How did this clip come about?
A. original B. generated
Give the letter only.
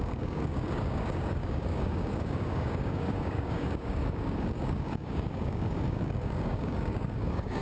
B